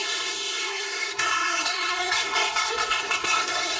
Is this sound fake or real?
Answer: fake